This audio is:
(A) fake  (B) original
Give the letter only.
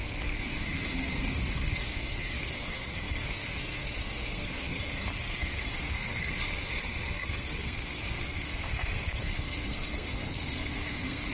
A